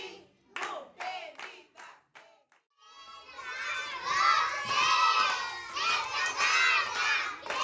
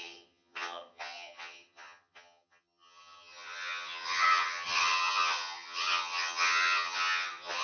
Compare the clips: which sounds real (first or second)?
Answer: first